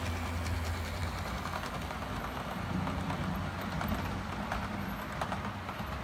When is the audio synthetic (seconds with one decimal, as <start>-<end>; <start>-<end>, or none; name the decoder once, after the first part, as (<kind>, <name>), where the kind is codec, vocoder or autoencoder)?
none